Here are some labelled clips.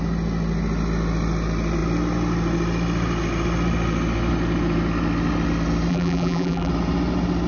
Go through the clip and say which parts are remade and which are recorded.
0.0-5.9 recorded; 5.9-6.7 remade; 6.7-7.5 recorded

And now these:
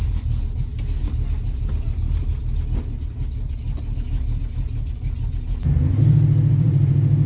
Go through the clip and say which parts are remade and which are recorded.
0.0-0.7 remade; 0.7-1.7 recorded; 1.7-2.3 remade; 2.3-6.5 recorded; 6.5-7.3 remade

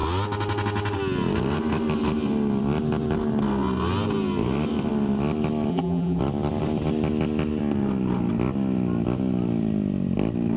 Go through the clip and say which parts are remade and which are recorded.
0.0-5.7 recorded; 5.7-6.2 remade; 6.2-10.6 recorded

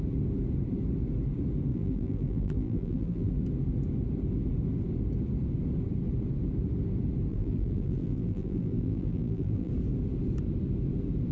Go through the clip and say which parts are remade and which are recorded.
0.0-1.7 recorded; 1.7-3.3 remade; 3.3-7.3 recorded; 7.3-9.7 remade; 9.7-11.3 recorded

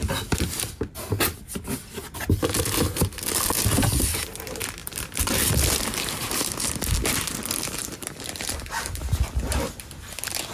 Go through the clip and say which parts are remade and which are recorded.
0.0-4.8 recorded; 4.8-6.5 remade; 6.5-7.8 recorded; 7.8-9.0 remade; 9.0-10.5 recorded

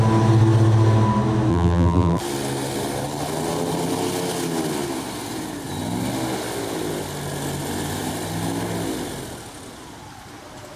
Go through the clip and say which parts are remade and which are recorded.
0.0-1.5 recorded; 1.5-2.2 remade; 2.2-10.8 recorded

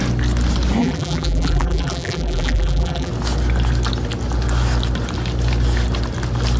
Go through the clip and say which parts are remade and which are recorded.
0.0-0.8 recorded; 0.8-3.1 remade; 3.1-6.6 recorded